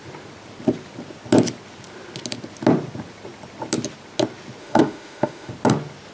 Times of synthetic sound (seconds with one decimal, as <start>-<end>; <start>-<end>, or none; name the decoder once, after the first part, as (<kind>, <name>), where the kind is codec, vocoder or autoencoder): 4.6-5.5 (autoencoder, DAC-VAE)